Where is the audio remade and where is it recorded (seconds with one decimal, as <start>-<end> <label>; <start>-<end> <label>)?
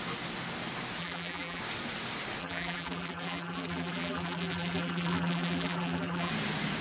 0.0-1.0 recorded; 1.0-1.6 remade; 1.6-2.4 recorded; 2.4-6.3 remade; 6.3-6.8 recorded